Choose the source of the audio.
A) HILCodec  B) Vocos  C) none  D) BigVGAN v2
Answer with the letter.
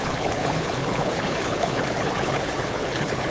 A